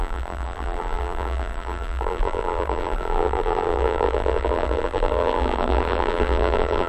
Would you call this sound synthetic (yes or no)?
yes